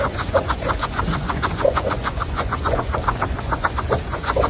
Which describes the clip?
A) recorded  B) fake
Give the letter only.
B